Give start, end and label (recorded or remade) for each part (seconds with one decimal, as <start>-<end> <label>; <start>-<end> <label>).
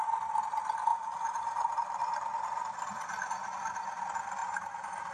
0.0-0.9 recorded; 0.9-4.0 remade; 4.0-4.4 recorded; 4.4-5.1 remade